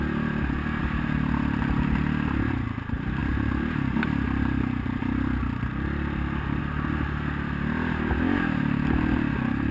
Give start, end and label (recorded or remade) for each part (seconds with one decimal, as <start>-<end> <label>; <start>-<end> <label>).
0.0-9.7 recorded